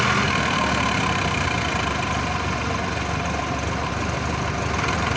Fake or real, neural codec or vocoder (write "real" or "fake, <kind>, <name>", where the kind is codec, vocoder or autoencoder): real